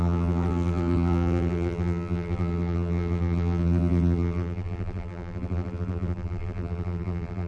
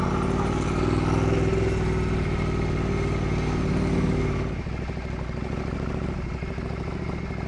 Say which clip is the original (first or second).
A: second